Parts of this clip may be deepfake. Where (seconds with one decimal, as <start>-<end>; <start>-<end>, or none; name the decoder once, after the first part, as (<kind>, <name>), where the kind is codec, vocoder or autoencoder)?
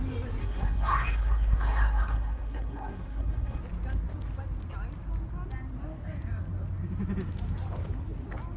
0.4-3.6 (codec, SNAC)